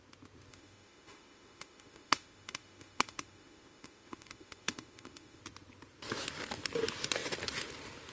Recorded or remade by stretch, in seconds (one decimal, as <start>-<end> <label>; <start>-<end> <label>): 0.0-0.5 recorded; 0.5-5.4 remade; 5.4-8.1 recorded